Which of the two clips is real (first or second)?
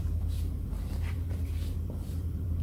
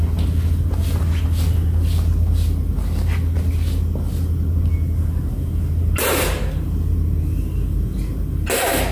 second